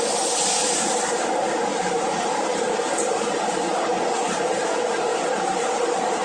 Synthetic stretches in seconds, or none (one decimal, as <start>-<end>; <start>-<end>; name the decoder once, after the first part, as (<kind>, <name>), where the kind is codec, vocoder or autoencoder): 1.7-2.8 (vocoder, BigVGAN v2); 5.1-6.2